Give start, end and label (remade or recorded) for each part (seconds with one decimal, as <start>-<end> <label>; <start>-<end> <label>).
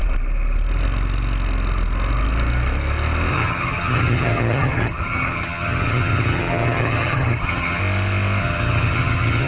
0.0-3.3 recorded; 3.3-7.8 remade; 7.8-8.4 recorded; 8.4-9.5 remade